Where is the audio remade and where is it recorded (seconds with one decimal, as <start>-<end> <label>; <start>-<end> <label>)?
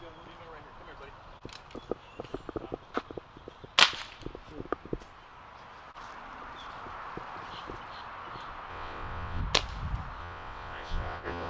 0.0-8.7 recorded; 8.7-9.4 remade; 9.4-10.2 recorded; 10.2-11.5 remade